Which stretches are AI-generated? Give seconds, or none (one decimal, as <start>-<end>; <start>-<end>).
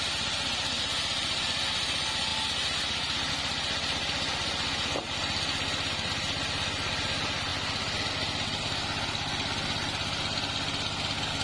none